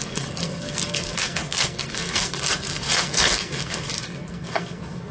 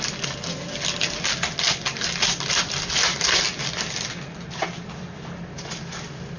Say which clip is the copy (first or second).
first